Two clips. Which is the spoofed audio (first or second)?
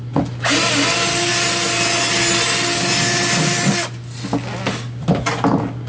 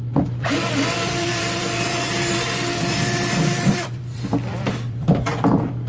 second